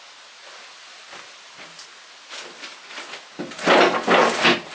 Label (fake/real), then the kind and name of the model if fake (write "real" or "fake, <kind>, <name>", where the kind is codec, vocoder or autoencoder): real